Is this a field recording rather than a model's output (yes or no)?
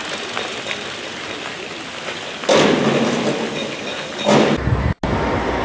yes